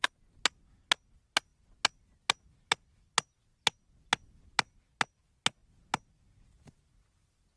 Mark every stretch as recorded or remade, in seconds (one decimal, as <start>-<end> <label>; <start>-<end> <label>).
0.0-7.6 recorded